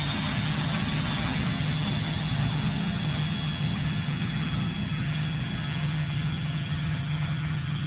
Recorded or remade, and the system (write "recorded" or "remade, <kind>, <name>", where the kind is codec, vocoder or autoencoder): remade, vocoder, HiFi-GAN